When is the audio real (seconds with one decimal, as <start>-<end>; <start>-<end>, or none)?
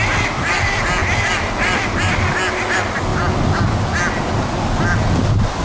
0.0-5.6